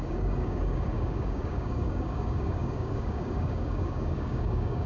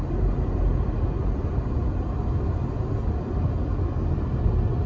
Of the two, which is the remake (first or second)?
first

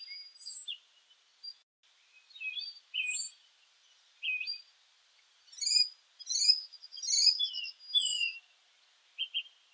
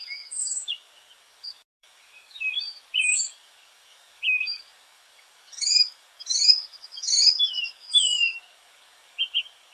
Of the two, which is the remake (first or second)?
second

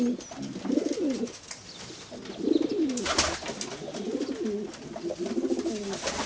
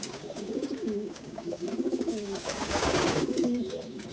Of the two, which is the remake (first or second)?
second